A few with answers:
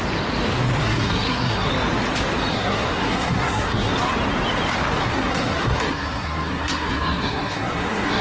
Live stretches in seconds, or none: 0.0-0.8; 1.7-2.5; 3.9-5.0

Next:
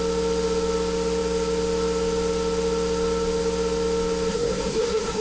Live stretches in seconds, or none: 0.0-4.3